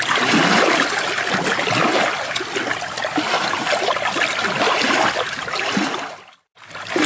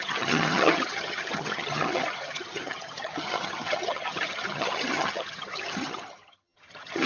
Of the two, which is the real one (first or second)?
first